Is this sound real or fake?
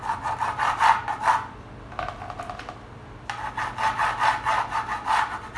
real